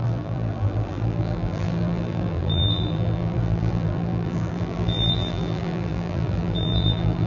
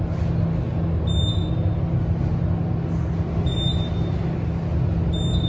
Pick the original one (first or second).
second